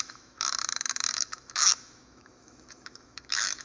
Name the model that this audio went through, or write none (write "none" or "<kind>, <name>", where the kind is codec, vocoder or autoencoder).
autoencoder, DAC-VAE